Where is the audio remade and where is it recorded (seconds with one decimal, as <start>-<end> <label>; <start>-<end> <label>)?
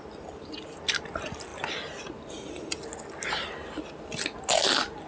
0.0-5.1 recorded